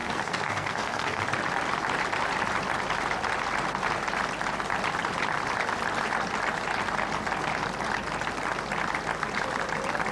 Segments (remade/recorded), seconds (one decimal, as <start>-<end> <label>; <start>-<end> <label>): 0.0-1.2 remade; 1.2-10.1 recorded